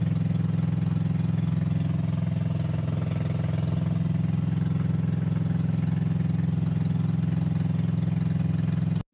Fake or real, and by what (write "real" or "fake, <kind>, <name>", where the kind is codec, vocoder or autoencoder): real